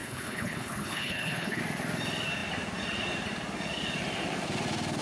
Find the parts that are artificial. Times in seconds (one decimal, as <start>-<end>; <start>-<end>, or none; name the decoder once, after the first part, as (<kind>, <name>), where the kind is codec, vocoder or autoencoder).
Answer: 0.0-1.6 (codec, HILCodec)